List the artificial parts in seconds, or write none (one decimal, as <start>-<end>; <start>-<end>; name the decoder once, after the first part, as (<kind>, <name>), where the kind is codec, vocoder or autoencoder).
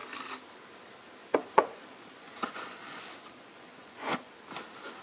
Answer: 1.3-4.3 (vocoder, Vocos)